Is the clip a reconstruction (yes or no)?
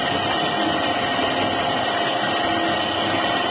no